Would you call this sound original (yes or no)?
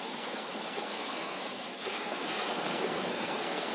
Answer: no